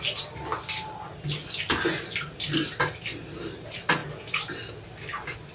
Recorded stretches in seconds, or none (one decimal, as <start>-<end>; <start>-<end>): 0.0-5.5